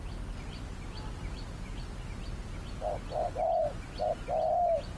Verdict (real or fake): real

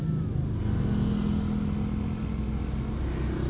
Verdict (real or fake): real